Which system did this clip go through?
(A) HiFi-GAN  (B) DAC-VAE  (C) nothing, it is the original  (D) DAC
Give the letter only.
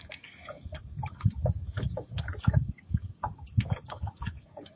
D